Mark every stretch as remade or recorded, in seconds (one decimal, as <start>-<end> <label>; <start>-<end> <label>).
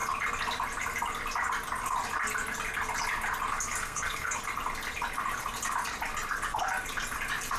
0.0-3.8 recorded; 3.8-4.4 remade; 4.4-7.6 recorded